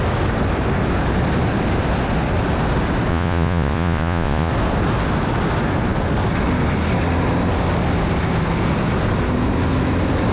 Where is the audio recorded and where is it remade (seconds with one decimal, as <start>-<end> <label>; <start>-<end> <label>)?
0.0-3.1 recorded; 3.1-4.5 remade; 4.5-10.3 recorded